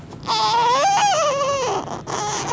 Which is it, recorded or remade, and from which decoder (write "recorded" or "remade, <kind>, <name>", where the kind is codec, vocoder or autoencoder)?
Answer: recorded